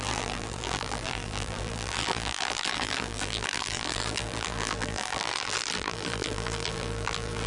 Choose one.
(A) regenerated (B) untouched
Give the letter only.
A